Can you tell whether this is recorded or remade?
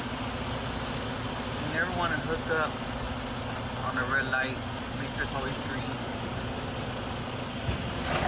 recorded